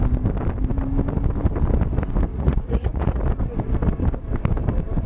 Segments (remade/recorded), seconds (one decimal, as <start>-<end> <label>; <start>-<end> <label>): 0.0-2.3 recorded; 2.3-3.2 remade; 3.2-5.1 recorded